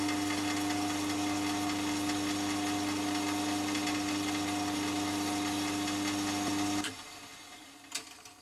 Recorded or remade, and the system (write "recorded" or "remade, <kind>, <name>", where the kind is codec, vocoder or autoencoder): recorded